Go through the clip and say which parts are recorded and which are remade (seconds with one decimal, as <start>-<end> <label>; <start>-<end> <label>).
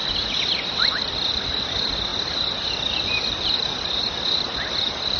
0.0-5.2 recorded